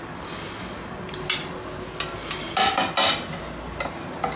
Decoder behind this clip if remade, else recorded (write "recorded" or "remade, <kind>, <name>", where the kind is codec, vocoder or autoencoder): recorded